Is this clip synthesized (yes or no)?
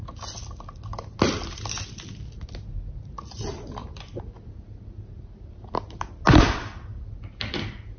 no